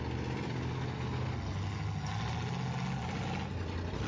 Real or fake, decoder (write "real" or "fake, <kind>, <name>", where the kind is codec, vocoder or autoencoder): real